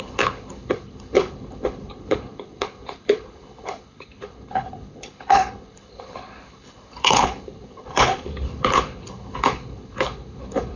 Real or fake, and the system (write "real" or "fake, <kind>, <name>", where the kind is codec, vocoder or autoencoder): fake, codec, HILCodec